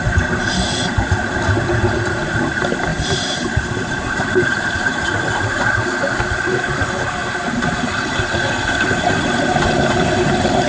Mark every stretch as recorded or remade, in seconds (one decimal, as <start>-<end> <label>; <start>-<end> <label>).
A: 0.0-2.9 recorded; 2.9-5.0 remade; 5.0-10.7 recorded